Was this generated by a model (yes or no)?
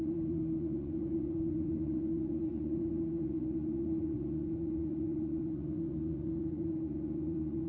yes